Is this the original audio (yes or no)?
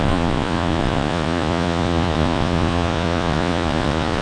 no